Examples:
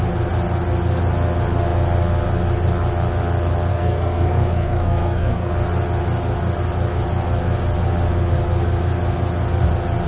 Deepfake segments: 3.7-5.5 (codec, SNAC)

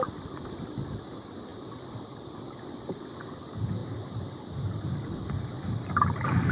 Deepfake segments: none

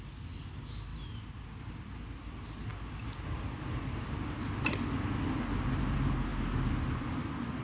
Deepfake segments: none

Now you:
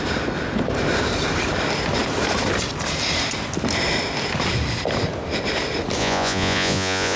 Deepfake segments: 6.0-7.2 (vocoder, Vocos)

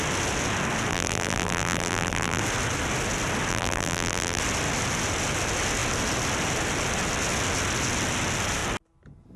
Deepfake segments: 0.9-2.4 (vocoder, BigVGAN v2); 3.5-4.4

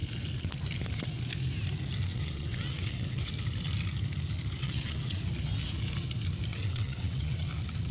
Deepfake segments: 2.1-3.3 (vocoder, WaveNeXt); 4.6-5.2; 6.5-7.5

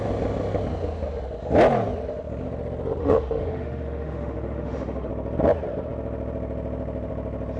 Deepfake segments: 3.0-5.1 (autoencoder, DAC-VAE)

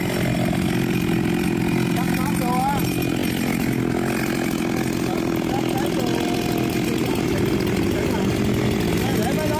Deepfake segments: none